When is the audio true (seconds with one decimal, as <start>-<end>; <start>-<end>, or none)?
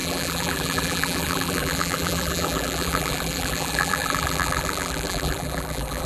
none